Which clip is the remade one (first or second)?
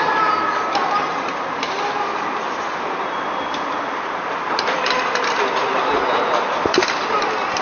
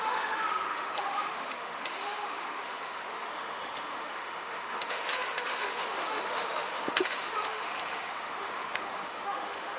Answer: second